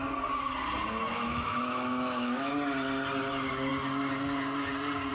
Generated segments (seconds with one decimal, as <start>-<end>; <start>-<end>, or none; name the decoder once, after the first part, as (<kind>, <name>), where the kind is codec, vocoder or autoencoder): 1.0-2.5 (autoencoder, DAC-VAE)